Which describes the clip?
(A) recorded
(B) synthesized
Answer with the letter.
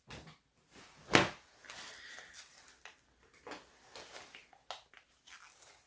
A